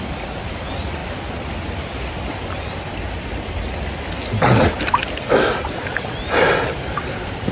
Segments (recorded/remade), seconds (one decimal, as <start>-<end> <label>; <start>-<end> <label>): 0.0-7.5 recorded